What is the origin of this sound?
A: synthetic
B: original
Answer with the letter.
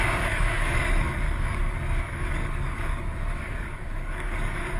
A